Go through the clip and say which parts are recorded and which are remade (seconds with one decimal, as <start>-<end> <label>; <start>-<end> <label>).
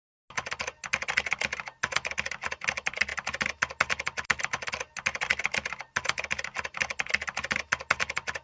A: 0.0-8.4 recorded